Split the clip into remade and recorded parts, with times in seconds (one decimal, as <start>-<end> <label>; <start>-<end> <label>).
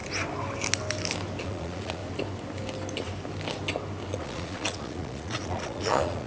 0.0-1.4 recorded; 1.4-2.0 remade; 2.0-4.1 recorded; 4.1-6.3 remade